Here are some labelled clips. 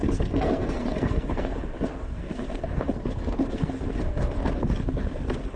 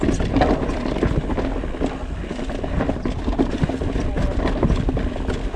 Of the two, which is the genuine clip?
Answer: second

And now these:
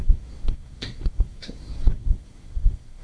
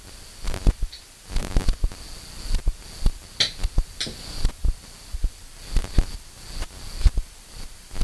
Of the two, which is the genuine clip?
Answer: second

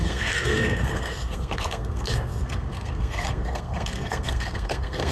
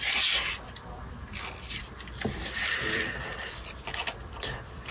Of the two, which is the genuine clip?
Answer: second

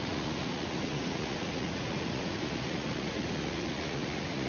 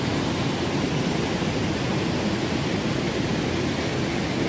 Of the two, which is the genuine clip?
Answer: second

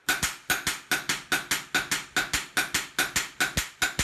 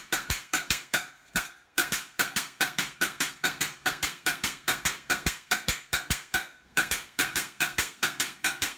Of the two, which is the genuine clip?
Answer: first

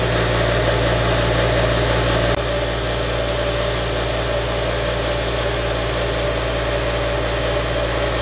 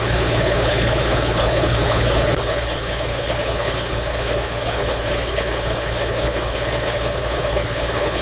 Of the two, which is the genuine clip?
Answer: first